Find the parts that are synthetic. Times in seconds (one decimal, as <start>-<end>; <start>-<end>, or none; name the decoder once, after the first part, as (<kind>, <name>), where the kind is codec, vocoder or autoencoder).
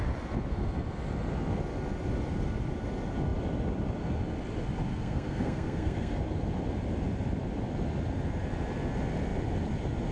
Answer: 4.9-6.2 (codec, SNAC)